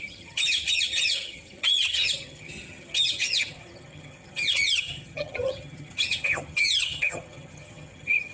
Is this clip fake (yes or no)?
yes